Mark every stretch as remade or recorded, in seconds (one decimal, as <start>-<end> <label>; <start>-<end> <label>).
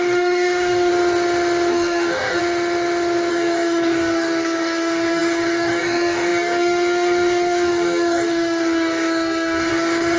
0.0-0.9 remade; 0.9-1.7 recorded; 1.7-2.4 remade; 2.4-3.3 recorded; 3.3-10.2 remade